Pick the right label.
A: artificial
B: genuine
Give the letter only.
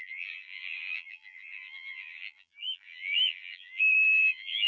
A